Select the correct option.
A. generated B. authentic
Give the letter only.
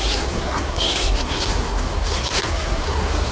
A